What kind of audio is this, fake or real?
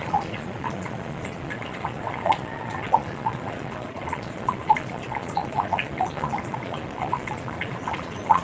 fake